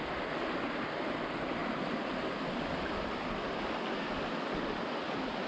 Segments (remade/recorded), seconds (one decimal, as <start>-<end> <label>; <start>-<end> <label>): 0.0-5.5 recorded